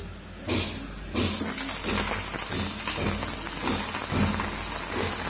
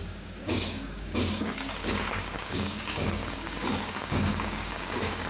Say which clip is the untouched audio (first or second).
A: first